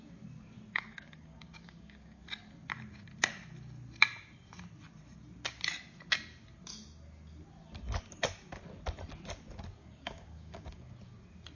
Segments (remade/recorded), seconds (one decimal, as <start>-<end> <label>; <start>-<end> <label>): 0.0-0.7 recorded; 0.7-2.2 remade; 2.2-9.8 recorded; 9.8-10.9 remade; 10.9-11.6 recorded